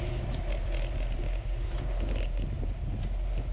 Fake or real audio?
real